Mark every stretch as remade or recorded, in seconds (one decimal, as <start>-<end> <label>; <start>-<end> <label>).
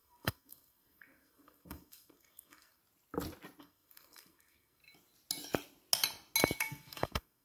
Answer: 0.0-2.8 remade; 2.8-3.6 recorded; 3.6-4.8 remade; 4.8-6.6 recorded; 6.6-7.4 remade